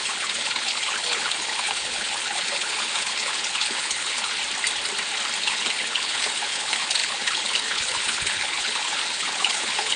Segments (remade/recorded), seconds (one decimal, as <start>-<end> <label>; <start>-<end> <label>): 0.0-4.4 remade; 4.4-5.4 recorded; 5.4-10.0 remade